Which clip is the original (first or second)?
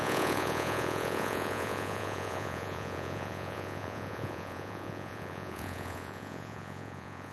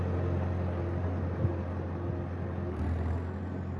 second